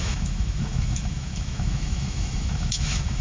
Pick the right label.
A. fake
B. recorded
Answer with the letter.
A